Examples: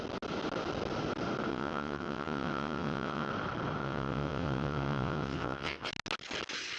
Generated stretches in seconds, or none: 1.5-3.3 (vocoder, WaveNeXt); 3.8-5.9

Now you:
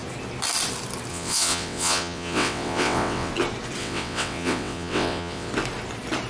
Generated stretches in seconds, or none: 1.1-3.3 (vocoder, WaveNeXt); 3.8-5.5

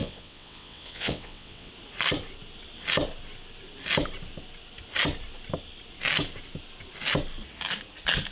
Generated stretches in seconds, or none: 0.0-1.7 (vocoder, WaveNeXt)

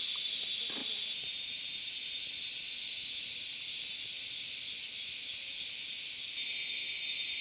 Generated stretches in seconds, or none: none

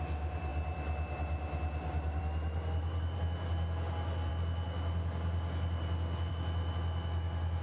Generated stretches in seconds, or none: none